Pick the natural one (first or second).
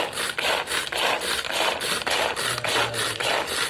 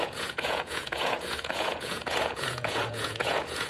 first